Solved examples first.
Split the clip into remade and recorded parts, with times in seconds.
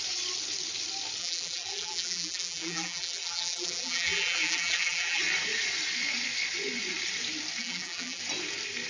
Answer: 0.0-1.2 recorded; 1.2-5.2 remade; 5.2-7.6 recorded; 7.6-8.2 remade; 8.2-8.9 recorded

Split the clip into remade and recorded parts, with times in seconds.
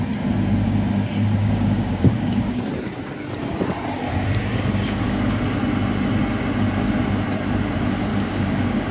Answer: 0.0-1.4 recorded; 1.4-2.6 remade; 2.6-4.5 recorded; 4.5-5.4 remade; 5.4-8.1 recorded; 8.1-8.9 remade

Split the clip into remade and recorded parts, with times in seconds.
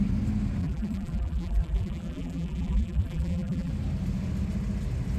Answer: 0.0-0.6 recorded; 0.6-3.7 remade; 3.7-5.2 recorded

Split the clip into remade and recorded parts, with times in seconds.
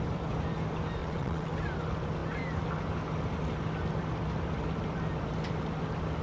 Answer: 0.0-1.0 recorded; 1.0-1.5 remade; 1.5-6.2 recorded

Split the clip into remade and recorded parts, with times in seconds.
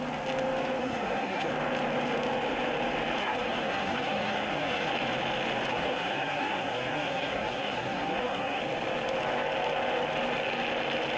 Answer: 0.0-0.8 recorded; 0.8-1.5 remade; 1.5-3.2 recorded; 3.2-4.9 remade; 4.9-5.7 recorded; 5.7-8.6 remade; 8.6-11.2 recorded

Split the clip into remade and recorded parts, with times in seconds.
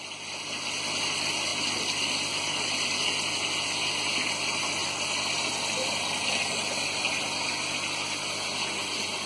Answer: 0.0-4.8 recorded; 4.8-5.5 remade; 5.5-9.3 recorded